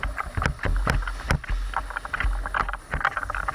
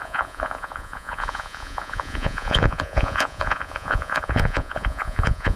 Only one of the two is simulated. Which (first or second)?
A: second